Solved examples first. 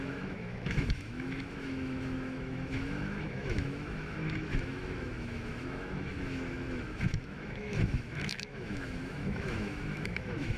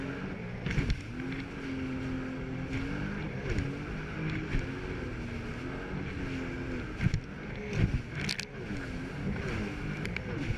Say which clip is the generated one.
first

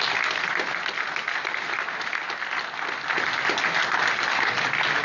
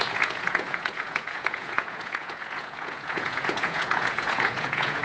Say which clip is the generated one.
second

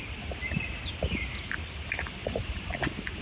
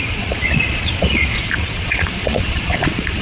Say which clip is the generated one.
second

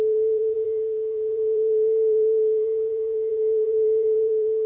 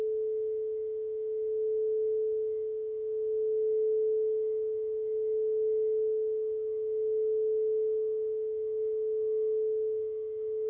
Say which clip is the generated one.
first